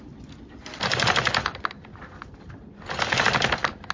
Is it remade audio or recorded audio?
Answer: recorded